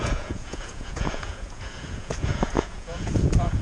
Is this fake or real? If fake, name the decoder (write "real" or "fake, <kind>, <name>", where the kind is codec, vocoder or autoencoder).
fake, vocoder, Vocos